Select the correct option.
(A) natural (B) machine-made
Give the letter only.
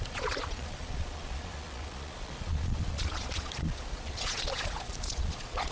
B